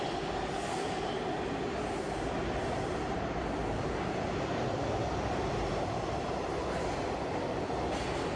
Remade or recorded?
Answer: recorded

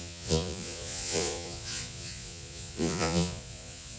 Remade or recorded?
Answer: remade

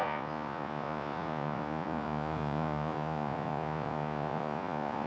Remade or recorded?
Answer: remade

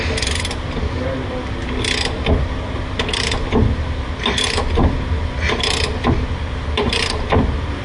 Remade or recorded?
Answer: recorded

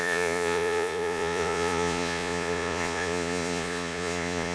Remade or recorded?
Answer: remade